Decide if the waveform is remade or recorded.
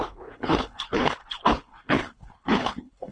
remade